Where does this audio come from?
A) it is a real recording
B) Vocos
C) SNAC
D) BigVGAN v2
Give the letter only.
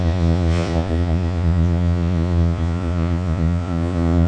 B